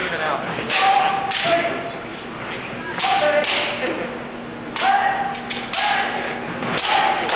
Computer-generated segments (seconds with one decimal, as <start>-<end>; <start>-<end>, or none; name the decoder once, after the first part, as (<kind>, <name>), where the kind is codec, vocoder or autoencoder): 0.0-1.0 (codec, DAC)